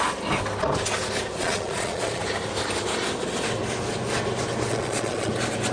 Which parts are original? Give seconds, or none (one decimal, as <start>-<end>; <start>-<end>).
0.0-1.4; 2.2-4.7; 5.3-5.7